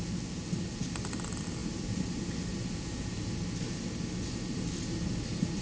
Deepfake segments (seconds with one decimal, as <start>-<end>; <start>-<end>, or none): 0.0-1.6; 5.0-5.6